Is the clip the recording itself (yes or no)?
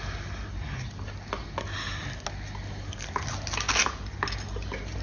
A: yes